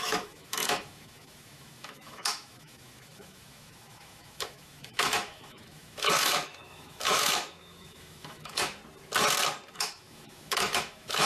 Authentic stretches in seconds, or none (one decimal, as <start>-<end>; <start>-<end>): 8.8-9.7

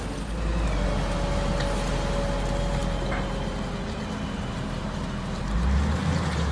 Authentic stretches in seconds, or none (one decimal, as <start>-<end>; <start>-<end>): 0.0-6.5

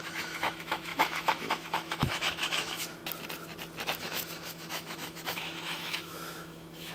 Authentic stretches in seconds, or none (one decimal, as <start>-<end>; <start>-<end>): 3.0-4.0

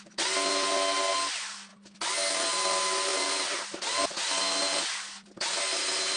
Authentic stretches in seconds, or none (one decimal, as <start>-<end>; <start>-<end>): 0.0-6.2

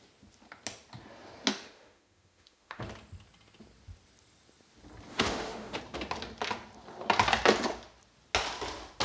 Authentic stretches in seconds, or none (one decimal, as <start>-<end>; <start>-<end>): 0.0-1.5; 2.8-5.1; 5.8-9.0

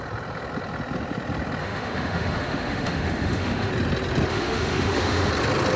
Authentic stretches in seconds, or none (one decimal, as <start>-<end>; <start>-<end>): 0.0-1.6; 3.7-4.3; 5.3-5.8